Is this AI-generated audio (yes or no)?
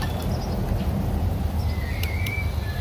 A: no